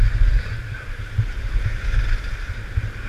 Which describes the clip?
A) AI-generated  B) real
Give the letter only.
B